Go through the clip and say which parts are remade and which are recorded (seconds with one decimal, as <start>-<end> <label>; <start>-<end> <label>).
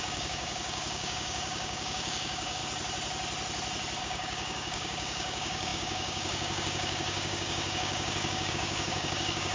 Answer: 0.0-2.6 remade; 2.6-4.0 recorded; 4.0-9.5 remade